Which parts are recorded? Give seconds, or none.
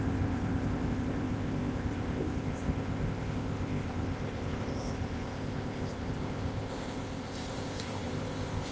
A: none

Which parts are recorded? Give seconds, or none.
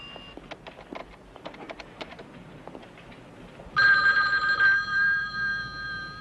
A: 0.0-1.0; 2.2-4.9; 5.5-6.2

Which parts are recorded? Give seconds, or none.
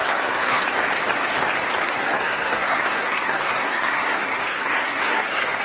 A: 0.6-1.8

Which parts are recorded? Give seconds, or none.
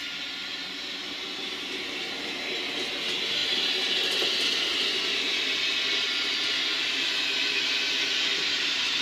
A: 3.4-8.5